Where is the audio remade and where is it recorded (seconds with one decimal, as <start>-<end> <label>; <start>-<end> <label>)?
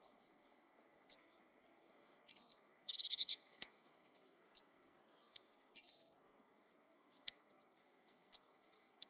0.0-9.1 remade